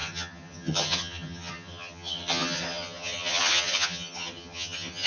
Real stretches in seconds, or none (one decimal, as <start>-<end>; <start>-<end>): none